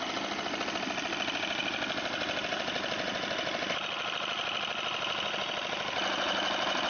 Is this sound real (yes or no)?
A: no